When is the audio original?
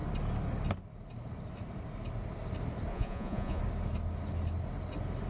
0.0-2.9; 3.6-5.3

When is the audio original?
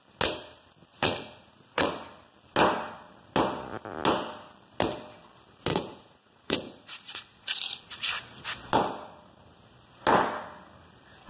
0.0-0.9; 1.9-5.7; 8.2-11.3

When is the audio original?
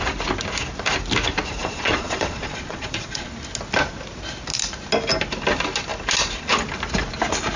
0.0-1.6; 3.3-7.6